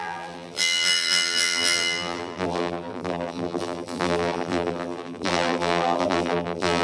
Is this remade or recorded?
remade